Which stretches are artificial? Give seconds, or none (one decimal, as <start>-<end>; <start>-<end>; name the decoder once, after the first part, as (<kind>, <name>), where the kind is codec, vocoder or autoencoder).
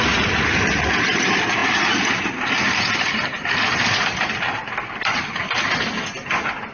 none